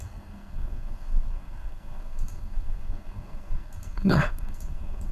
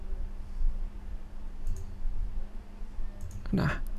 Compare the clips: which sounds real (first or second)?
second